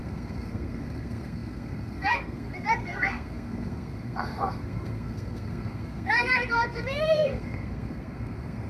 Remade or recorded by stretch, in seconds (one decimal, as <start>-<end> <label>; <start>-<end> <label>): 0.0-8.7 remade